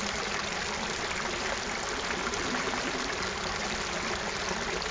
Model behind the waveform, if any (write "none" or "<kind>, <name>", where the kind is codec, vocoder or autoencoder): none